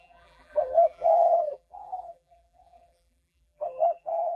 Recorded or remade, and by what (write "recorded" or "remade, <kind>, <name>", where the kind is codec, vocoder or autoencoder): remade, vocoder, BigVGAN v2